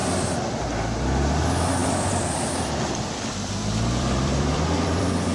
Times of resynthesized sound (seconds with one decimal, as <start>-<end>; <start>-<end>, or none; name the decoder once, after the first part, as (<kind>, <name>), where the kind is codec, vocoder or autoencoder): 0.0-0.6 (vocoder, BigVGAN v2); 1.8-5.3